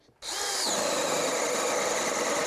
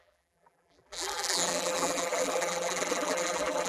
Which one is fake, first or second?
second